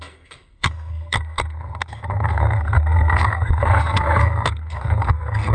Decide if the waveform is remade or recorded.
remade